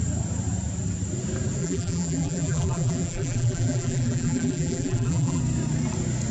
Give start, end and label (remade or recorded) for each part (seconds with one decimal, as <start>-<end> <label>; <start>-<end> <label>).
0.0-1.6 recorded; 1.6-5.4 remade; 5.4-6.3 recorded